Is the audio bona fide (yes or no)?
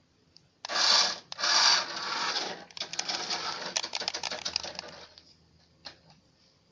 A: yes